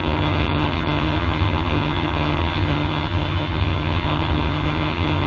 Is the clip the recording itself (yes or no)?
no